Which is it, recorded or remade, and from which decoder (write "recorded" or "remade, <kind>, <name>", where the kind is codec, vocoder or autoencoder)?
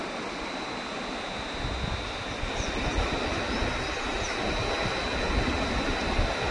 recorded